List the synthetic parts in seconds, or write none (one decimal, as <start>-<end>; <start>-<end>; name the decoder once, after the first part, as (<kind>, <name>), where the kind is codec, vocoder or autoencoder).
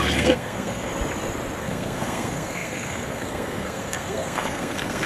0.0-0.9 (codec, SNAC); 1.6-5.1